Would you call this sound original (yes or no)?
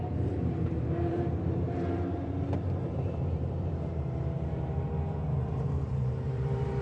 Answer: no